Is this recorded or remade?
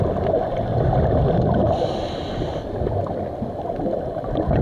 recorded